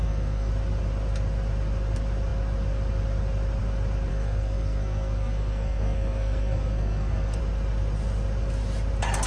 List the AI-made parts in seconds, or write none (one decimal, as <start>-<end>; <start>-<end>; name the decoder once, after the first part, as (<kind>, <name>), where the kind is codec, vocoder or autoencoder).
0.0-0.5 (codec, SNAC); 4.1-7.4